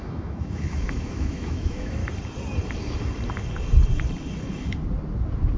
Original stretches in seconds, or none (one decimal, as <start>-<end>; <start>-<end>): 2.0-5.6